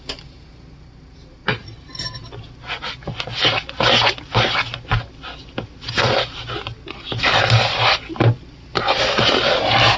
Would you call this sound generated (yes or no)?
no